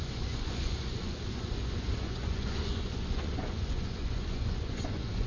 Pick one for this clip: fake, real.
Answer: fake